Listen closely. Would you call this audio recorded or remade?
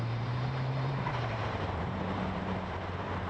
remade